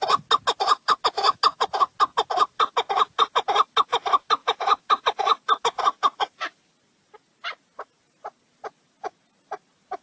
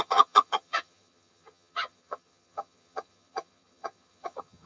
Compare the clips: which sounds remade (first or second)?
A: second